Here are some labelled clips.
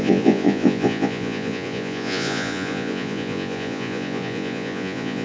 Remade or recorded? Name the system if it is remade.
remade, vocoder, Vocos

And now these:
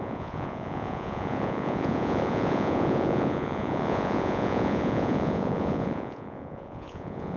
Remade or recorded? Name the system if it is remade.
remade, vocoder, Vocos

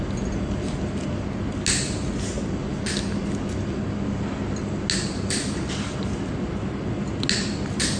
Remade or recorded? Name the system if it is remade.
recorded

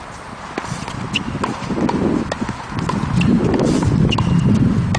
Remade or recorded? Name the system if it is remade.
recorded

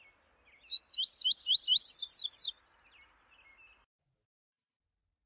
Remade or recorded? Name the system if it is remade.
recorded